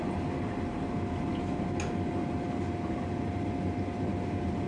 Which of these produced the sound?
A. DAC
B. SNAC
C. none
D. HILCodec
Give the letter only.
C